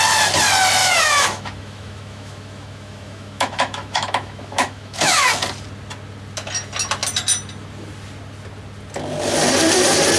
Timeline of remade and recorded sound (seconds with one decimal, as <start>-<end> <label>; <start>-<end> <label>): 0.0-0.8 recorded; 0.8-5.3 remade; 5.3-10.2 recorded

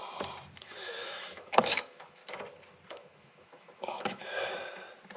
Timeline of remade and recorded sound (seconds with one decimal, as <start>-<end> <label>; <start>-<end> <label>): 0.0-0.6 recorded; 0.6-2.2 remade; 2.2-2.9 recorded; 2.9-4.2 remade; 4.2-5.2 recorded

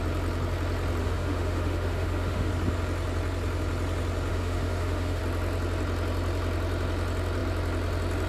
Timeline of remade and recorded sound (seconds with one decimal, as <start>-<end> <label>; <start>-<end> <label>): 0.0-1.0 recorded; 1.0-2.5 remade; 2.5-4.3 recorded; 4.3-5.2 remade; 5.2-8.3 recorded

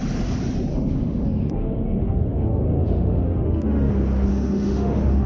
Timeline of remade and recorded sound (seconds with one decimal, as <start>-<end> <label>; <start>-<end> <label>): 0.0-0.7 recorded; 0.7-3.9 remade; 3.9-4.3 recorded; 4.3-5.3 remade

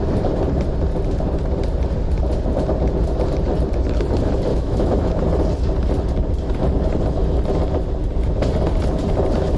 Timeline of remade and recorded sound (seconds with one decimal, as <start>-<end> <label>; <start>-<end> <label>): 0.0-4.5 recorded; 4.5-5.1 remade; 5.1-9.6 recorded